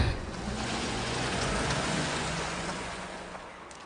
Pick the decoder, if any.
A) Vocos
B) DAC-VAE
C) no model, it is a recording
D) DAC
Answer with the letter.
A